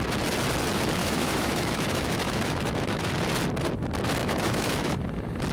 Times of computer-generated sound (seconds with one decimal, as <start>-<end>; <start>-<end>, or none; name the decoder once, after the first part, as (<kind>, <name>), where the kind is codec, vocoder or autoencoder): 1.0-3.1 (autoencoder, DAC-VAE); 4.2-5.0